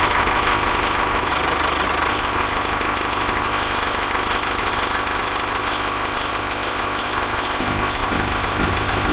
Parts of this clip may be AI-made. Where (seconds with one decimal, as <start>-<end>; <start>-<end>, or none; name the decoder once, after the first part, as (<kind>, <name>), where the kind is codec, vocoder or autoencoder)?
0.0-1.3 (codec, ZipCodec); 2.1-9.1